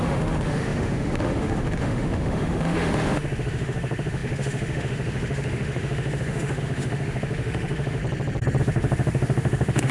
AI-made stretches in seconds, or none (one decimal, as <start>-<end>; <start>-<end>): 0.0-8.0; 8.6-9.9